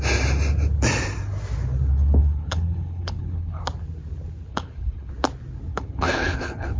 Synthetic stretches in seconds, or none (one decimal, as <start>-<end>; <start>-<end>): 1.9-3.6; 4.5-5.1; 5.7-6.8

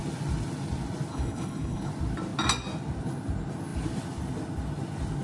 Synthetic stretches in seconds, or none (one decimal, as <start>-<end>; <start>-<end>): 1.1-1.9